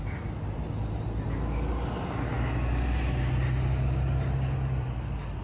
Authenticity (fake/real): real